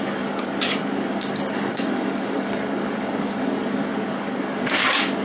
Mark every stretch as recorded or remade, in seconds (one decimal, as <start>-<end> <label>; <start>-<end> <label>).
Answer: 0.0-5.2 remade